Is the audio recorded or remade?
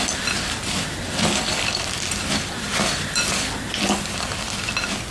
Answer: recorded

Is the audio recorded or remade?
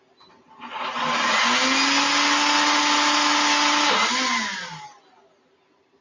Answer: recorded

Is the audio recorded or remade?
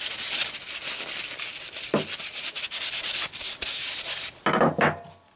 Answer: recorded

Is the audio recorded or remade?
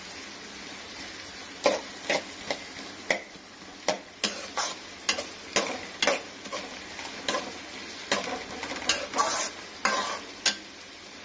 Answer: recorded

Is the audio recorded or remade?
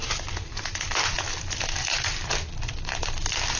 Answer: recorded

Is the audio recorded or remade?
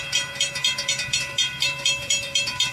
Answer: remade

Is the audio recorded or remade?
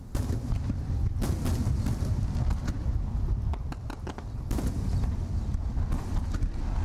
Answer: recorded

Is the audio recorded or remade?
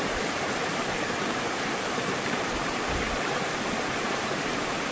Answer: remade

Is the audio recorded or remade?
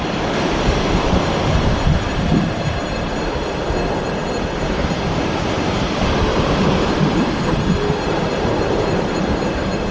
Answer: remade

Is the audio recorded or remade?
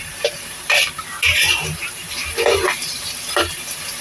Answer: remade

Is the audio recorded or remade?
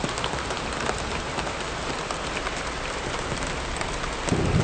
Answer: recorded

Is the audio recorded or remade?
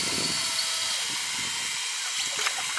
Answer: recorded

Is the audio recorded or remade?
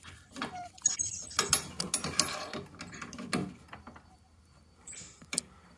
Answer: recorded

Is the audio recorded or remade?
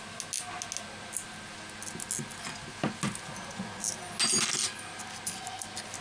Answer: recorded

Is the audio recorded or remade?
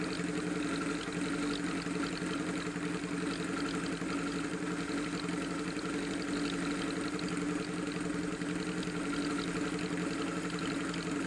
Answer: recorded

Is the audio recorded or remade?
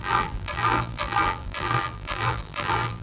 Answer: remade